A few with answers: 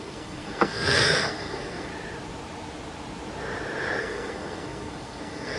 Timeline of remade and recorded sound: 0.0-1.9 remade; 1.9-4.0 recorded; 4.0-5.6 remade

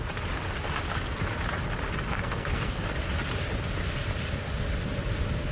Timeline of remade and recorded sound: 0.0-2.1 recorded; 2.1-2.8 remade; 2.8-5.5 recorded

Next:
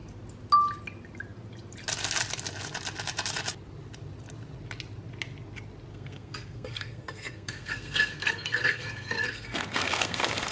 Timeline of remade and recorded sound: 0.0-5.9 recorded; 5.9-10.5 remade